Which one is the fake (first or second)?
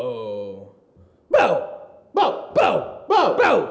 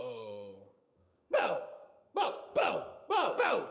second